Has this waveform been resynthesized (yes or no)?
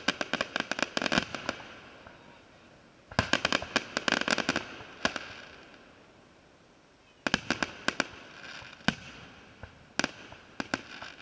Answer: no